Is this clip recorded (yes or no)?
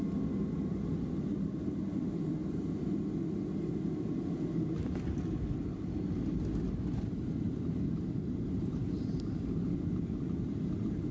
yes